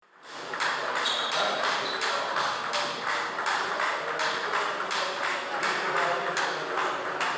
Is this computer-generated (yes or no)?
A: no